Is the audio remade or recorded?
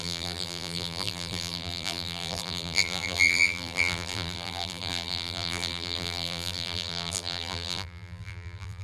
remade